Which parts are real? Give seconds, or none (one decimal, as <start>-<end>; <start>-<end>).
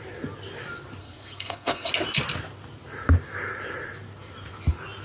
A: 0.0-1.0; 1.9-5.0